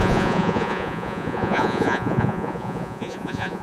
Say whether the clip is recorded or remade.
remade